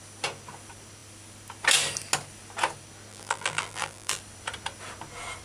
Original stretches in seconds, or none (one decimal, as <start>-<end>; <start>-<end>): 0.0-3.1; 4.2-5.4